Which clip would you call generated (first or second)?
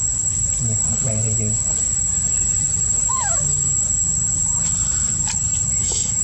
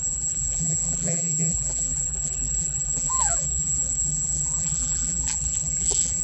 second